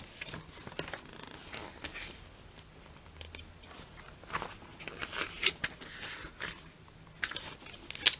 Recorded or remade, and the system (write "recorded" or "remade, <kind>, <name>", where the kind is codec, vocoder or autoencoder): recorded